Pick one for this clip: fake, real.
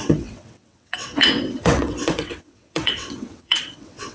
fake